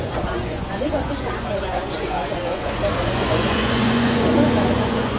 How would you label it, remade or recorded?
remade